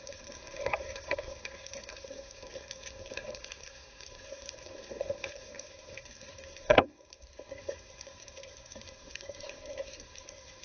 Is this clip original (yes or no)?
no